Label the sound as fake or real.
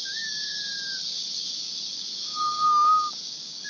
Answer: fake